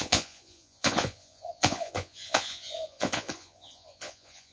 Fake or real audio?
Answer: fake